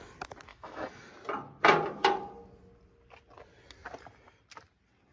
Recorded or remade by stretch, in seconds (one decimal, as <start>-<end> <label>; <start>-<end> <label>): 0.0-0.5 recorded; 0.5-1.1 remade; 1.1-5.1 recorded